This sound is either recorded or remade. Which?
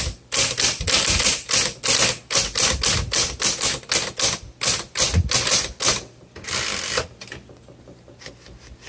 recorded